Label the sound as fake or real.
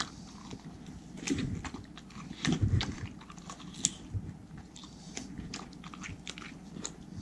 real